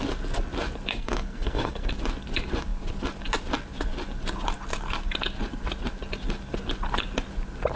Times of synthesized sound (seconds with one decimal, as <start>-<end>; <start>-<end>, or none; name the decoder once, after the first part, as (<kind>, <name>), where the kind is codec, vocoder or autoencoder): 0.9-1.9 (codec, SNAC)